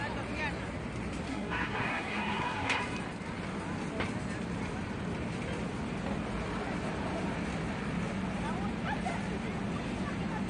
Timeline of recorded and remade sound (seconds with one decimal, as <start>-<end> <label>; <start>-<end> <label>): 0.0-1.3 recorded; 1.3-2.8 remade; 2.8-10.5 recorded